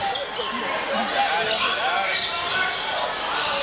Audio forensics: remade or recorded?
recorded